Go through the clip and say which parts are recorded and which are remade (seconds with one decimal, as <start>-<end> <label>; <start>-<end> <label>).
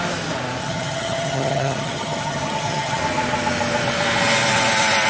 0.0-0.6 recorded; 0.6-3.0 remade; 3.0-5.1 recorded